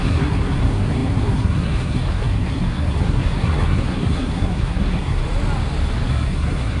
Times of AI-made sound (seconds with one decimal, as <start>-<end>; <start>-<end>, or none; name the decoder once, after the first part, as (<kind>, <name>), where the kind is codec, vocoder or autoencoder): 0.0-5.2 (codec, SNAC); 6.1-6.8